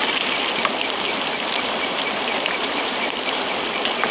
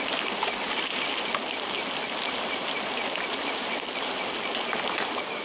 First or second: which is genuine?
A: second